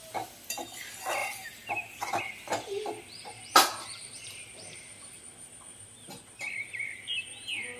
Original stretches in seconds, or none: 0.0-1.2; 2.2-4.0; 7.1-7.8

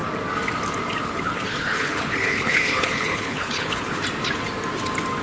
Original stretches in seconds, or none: 0.0-1.0; 4.0-5.2

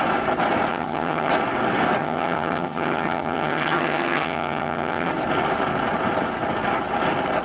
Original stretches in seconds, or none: 0.0-0.7; 1.3-2.0; 5.1-7.4